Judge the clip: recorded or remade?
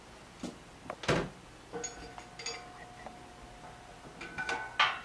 recorded